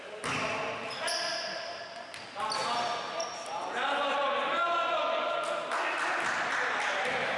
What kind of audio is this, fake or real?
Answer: real